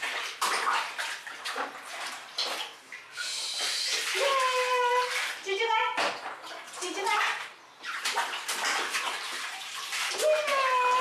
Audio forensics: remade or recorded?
recorded